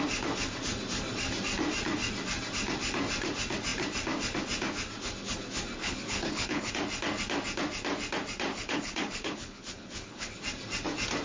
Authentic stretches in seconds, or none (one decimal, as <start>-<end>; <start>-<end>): 0.0-5.8; 6.7-8.5; 10.4-11.2